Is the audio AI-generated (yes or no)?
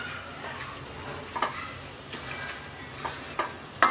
no